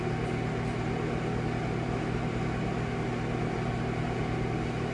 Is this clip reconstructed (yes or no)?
no